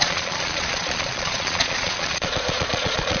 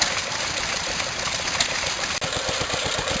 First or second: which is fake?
first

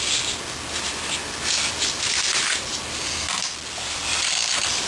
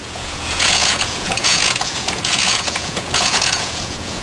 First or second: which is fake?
second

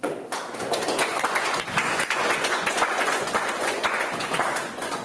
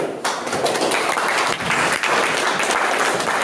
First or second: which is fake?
first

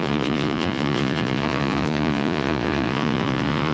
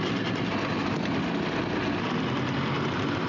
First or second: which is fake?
first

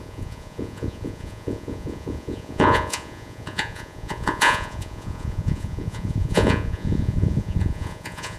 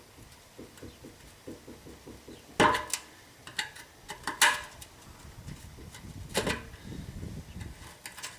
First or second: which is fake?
first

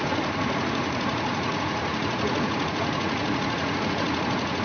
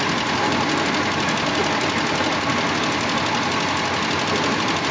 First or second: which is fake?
first